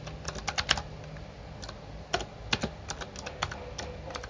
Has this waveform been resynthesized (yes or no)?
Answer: no